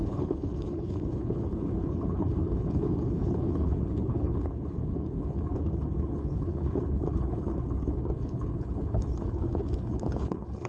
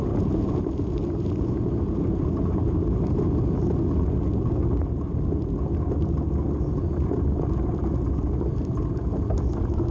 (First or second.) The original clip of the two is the second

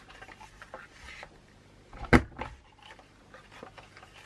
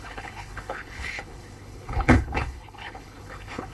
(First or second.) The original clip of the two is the first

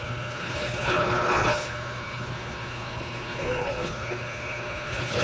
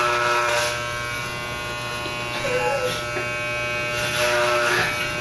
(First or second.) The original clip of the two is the second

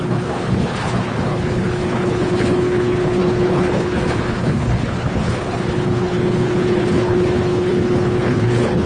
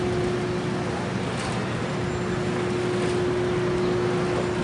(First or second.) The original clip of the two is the second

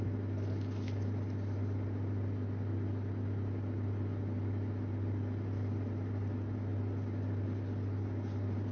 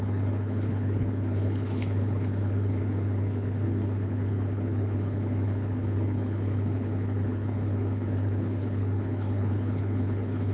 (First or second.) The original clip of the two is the first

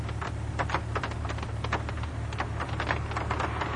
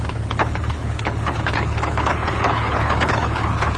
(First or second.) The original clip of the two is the first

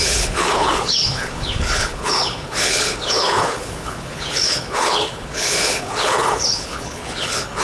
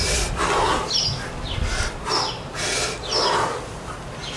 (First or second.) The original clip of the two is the second